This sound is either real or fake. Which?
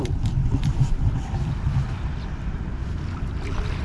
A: fake